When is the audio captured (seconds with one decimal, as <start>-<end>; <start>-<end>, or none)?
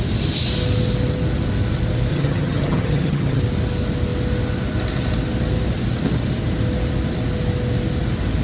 0.0-2.1; 3.4-8.4